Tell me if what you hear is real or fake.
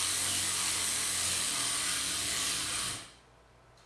real